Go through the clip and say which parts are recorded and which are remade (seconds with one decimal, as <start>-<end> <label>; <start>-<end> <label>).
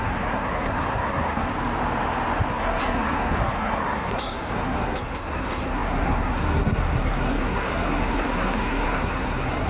0.0-1.5 remade; 1.5-2.5 recorded; 2.5-9.7 remade